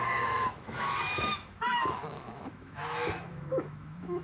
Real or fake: fake